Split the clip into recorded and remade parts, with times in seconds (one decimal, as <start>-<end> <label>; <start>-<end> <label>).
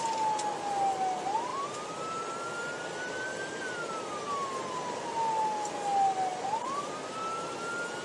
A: 0.0-1.5 recorded; 1.5-2.4 remade; 2.4-6.3 recorded; 6.3-6.9 remade; 6.9-8.0 recorded